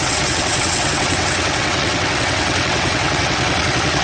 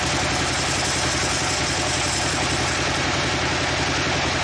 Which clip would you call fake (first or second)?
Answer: first